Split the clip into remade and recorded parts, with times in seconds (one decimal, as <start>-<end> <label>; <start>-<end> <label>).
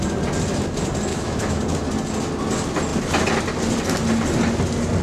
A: 0.0-1.1 recorded; 1.1-1.6 remade; 1.6-5.0 recorded